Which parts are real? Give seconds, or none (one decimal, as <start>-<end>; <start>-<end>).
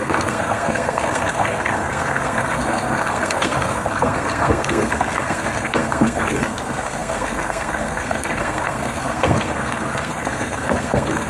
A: none